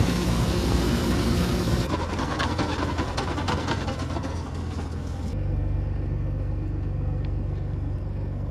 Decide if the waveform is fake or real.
fake